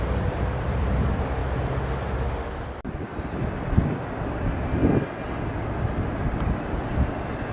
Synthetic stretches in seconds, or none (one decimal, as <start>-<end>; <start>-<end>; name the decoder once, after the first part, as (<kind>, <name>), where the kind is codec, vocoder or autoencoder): 0.0-1.4 (vocoder, BigVGAN v2); 2.5-4.8; 6.3-7.5